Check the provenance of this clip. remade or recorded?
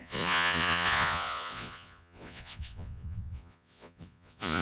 remade